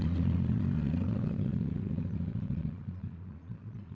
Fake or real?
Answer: fake